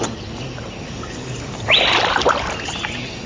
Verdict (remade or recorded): recorded